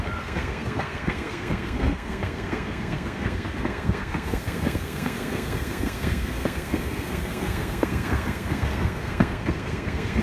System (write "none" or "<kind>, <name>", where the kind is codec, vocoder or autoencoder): codec, SNAC